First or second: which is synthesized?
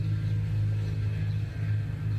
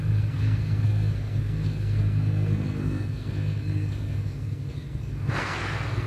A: second